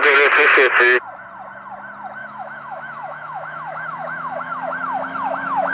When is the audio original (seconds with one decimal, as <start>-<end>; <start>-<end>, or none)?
0.0-2.2